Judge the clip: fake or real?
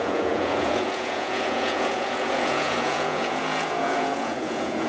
fake